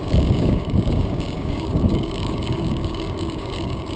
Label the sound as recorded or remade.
remade